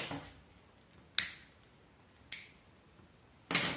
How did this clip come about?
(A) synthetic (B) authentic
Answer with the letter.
B